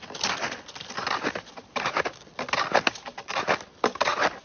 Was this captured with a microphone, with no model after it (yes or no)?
yes